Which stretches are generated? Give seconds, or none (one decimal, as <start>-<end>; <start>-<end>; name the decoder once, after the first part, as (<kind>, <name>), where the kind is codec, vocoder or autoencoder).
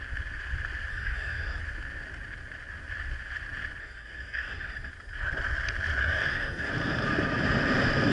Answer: 0.9-1.6 (codec, DAC); 3.8-4.9; 6.0-6.7